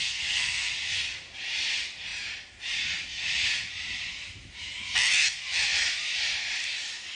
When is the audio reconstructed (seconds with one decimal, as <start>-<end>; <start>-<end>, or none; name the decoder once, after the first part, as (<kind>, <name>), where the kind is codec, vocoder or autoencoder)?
0.0-0.7 (codec, SNAC)